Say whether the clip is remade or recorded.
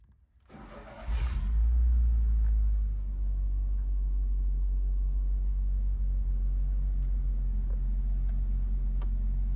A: recorded